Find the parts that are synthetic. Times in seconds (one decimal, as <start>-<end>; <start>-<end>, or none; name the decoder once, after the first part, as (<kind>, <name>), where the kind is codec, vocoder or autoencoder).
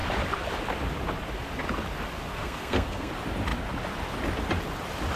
2.3-3.1 (codec, SNAC)